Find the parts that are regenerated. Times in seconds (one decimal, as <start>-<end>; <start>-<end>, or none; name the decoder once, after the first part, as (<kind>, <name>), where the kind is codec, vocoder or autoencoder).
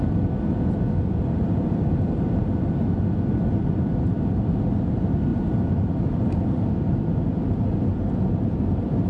none